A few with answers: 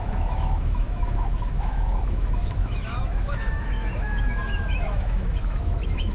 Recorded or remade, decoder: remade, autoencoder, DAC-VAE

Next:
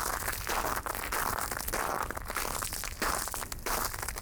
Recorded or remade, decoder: recorded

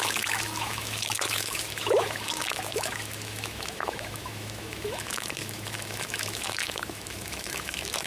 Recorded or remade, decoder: remade, autoencoder, DAC-VAE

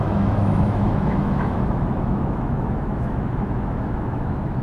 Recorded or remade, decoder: remade, autoencoder, DAC-VAE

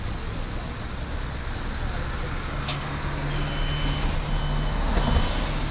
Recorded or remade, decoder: recorded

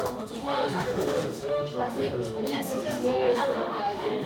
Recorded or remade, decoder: remade, autoencoder, DAC-VAE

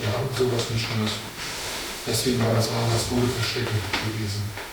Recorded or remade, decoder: remade, autoencoder, DAC-VAE